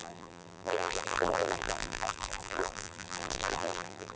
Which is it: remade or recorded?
remade